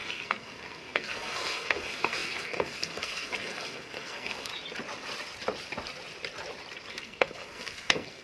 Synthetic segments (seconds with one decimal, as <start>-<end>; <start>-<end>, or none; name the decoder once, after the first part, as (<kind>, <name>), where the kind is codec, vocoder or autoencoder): 0.0-4.5 (codec, SNAC); 6.9-8.2